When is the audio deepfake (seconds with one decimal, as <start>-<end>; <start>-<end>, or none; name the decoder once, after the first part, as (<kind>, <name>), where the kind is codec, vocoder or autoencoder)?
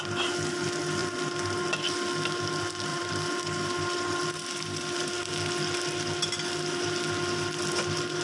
1.0-1.6 (vocoder, BigVGAN v2); 2.9-5.3